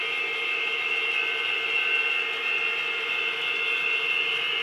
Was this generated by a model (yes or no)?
no